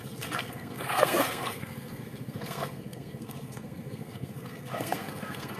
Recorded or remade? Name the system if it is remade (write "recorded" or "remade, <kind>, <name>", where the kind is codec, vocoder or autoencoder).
remade, codec, SNAC